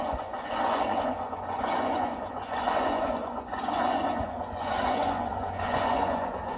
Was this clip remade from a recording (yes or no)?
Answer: yes